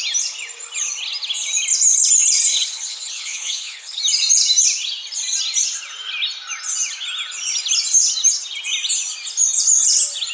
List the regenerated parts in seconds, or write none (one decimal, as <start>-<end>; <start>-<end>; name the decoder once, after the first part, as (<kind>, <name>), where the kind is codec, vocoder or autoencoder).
2.5-4.0 (codec, HILCodec)